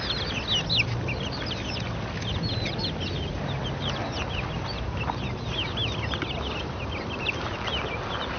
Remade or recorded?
recorded